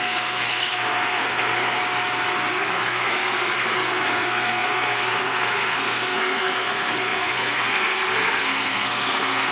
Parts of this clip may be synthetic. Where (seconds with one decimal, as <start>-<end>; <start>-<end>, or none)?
0.0-1.8; 2.5-9.5